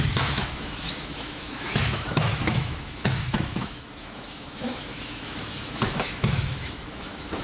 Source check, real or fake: fake